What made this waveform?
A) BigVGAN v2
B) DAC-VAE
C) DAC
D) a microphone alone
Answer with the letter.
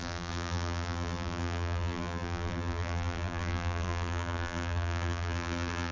A